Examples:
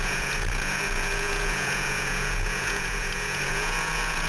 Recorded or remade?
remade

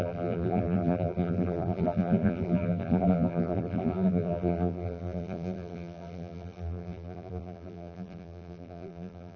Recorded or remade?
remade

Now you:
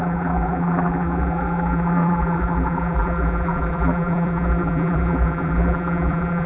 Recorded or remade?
remade